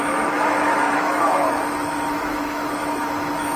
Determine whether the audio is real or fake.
fake